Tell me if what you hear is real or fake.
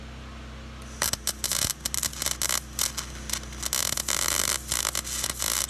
real